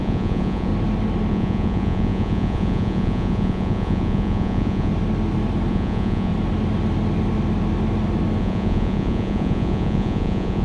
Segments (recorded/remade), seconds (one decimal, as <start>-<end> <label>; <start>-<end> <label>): 0.0-0.7 remade; 0.7-1.3 recorded; 1.3-4.9 remade; 4.9-5.7 recorded; 5.7-6.3 remade; 6.3-8.4 recorded; 8.4-10.6 remade